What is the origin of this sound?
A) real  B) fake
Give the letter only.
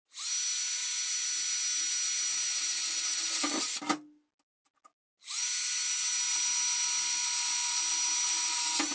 A